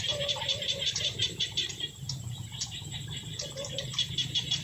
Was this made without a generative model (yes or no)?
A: no